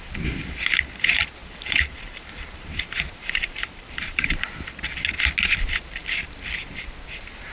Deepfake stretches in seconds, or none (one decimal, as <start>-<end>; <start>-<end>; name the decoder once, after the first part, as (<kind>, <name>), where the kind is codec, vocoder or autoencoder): 1.4-4.5 (vocoder, BigVGAN v2)

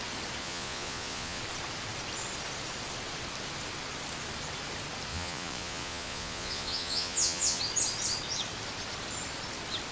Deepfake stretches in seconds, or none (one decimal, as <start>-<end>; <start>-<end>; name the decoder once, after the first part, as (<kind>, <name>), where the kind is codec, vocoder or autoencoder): 0.4-1.4 (vocoder, Vocos); 5.1-7.6